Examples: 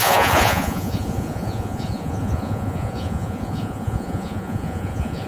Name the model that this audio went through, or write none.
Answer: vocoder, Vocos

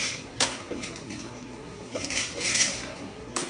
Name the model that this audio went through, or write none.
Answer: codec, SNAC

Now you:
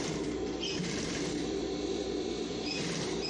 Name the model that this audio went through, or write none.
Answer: vocoder, BigVGAN v2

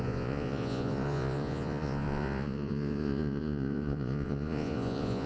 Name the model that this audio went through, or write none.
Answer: vocoder, Vocos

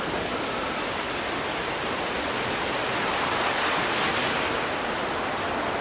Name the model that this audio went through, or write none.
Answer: none